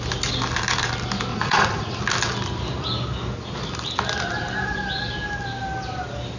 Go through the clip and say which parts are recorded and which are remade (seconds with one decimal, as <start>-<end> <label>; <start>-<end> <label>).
0.0-1.3 recorded; 1.3-2.0 remade; 2.0-6.4 recorded